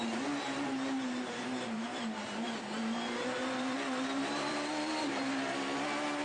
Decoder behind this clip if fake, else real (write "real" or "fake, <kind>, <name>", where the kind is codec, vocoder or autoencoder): fake, vocoder, BigVGAN v2